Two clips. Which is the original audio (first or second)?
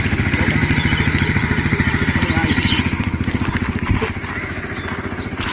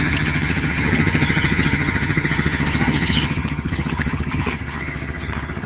first